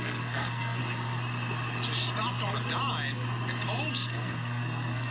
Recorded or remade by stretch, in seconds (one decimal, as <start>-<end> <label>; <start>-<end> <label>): 0.0-0.8 remade; 0.8-3.9 recorded; 3.9-5.1 remade